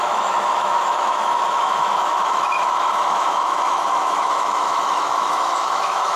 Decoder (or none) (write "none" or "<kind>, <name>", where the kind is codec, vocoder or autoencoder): autoencoder, DAC-VAE